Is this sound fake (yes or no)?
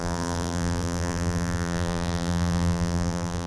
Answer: yes